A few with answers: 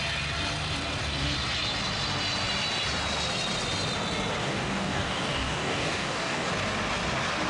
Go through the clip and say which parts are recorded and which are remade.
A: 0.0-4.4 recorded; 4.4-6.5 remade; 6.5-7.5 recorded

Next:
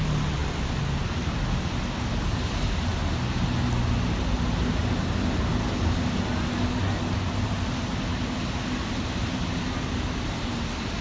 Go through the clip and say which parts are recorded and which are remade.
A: 0.0-11.0 recorded

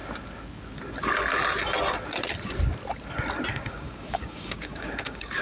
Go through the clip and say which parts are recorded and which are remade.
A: 0.0-3.5 recorded; 3.5-5.4 remade

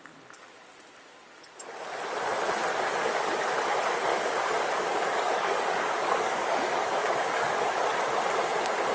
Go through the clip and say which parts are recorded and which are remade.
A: 0.0-2.7 recorded; 2.7-3.3 remade; 3.3-4.1 recorded; 4.1-7.8 remade; 7.8-8.9 recorded

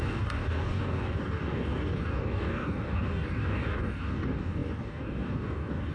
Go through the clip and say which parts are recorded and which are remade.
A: 0.0-5.9 remade

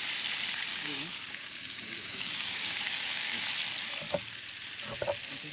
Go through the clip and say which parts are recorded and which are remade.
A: 0.0-0.7 recorded; 0.7-3.4 remade; 3.4-5.5 recorded